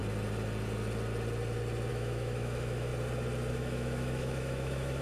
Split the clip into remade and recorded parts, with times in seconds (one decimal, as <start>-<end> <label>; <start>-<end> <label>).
0.0-1.9 recorded; 1.9-2.9 remade; 2.9-3.5 recorded; 3.5-5.0 remade